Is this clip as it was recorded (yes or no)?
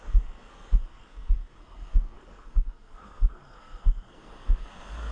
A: no